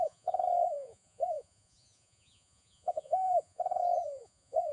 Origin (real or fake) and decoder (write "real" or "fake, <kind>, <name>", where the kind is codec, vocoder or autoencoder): fake, vocoder, Vocos